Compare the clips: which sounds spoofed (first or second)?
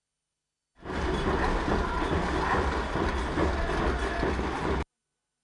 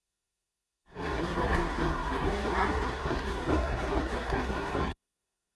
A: second